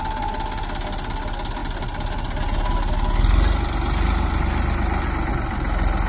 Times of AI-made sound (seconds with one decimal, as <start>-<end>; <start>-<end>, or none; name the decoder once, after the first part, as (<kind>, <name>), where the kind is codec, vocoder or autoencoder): none